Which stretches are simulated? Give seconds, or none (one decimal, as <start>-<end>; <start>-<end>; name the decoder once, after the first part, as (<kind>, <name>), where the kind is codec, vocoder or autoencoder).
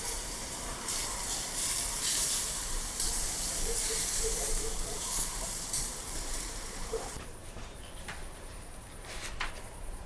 0.0-10.1 (vocoder, BigVGAN v2)